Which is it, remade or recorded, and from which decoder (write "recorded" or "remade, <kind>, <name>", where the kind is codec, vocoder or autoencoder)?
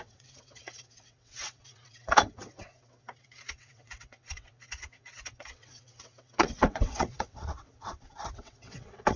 remade, vocoder, WaveNeXt